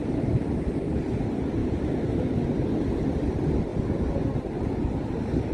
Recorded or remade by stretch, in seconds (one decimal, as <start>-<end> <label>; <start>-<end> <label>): 0.0-1.6 recorded; 1.6-2.3 remade; 2.3-5.5 recorded